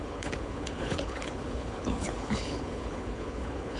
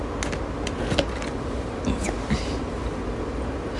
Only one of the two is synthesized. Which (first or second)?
first